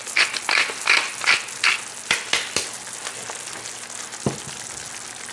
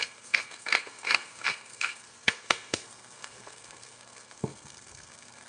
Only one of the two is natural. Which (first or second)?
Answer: first